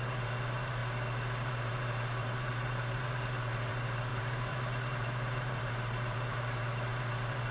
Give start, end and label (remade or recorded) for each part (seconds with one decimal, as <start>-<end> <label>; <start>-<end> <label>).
0.0-0.8 remade; 0.8-1.5 recorded; 1.5-7.5 remade